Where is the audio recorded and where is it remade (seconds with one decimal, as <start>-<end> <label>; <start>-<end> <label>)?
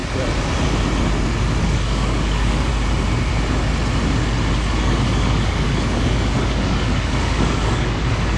0.0-1.6 recorded; 1.6-2.7 remade; 2.7-4.5 recorded; 4.5-8.4 remade